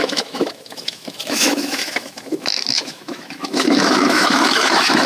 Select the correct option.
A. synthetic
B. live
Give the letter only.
A